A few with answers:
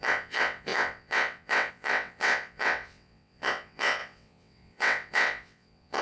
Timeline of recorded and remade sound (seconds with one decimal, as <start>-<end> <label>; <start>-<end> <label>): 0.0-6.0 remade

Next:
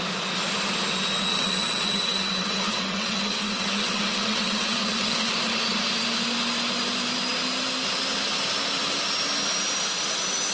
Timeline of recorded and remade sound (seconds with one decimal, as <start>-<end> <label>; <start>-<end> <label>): 0.0-1.3 recorded; 1.3-5.3 remade; 5.3-10.5 recorded

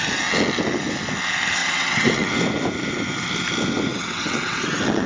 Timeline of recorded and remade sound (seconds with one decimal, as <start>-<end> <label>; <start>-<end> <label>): 0.0-1.6 recorded; 1.6-2.3 remade; 2.3-3.9 recorded; 3.9-5.1 remade

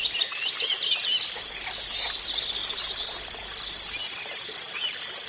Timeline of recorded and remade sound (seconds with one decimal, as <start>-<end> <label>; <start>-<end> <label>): 0.0-5.3 recorded

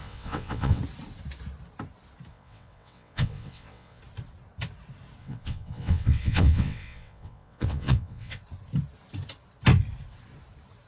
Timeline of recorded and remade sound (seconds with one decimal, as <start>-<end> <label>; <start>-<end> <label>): 0.0-0.8 remade; 0.8-2.3 recorded; 2.3-4.0 remade; 4.0-5.2 recorded; 5.2-8.4 remade; 8.4-10.9 recorded

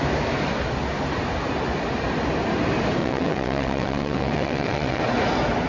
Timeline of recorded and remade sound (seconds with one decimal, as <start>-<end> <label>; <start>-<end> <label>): 0.0-3.0 recorded; 3.0-5.0 remade; 5.0-5.7 recorded